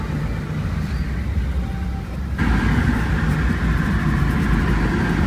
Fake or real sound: real